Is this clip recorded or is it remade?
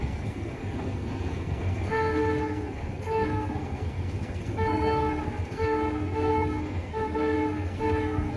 remade